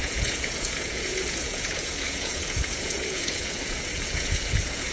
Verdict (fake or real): fake